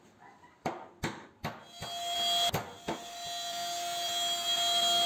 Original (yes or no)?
yes